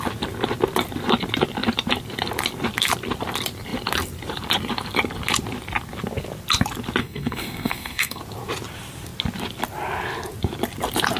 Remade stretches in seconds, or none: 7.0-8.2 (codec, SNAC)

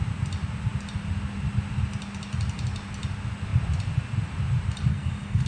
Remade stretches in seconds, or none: 4.9-5.5 (codec, SNAC)

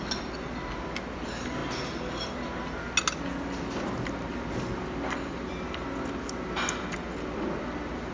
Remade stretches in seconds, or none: none

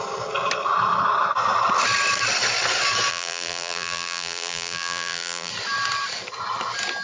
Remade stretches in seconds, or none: 3.1-5.5 (vocoder, BigVGAN v2)

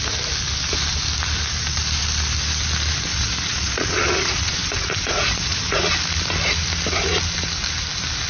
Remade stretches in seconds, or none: 3.1-5.9 (vocoder, Vocos)